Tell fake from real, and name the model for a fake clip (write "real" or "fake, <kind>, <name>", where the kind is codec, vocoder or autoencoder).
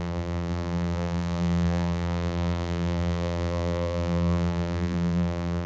fake, vocoder, BigVGAN v2